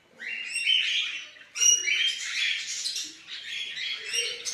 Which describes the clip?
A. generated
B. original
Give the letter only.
B